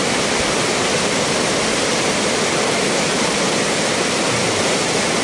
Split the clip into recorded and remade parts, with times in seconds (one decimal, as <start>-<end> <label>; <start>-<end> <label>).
0.0-5.2 recorded